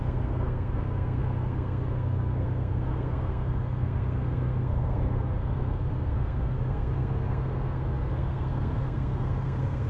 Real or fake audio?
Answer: fake